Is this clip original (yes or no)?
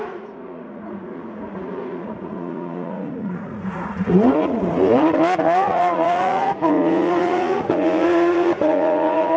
no